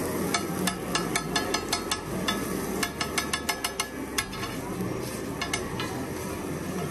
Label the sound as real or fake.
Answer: real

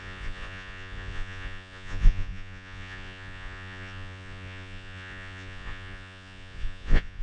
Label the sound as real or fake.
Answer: fake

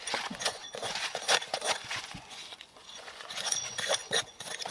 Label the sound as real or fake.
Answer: fake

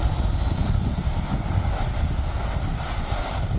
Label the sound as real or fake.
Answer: real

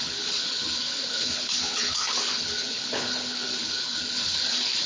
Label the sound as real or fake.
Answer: fake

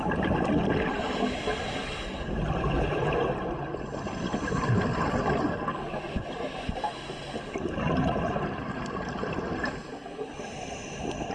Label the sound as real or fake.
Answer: real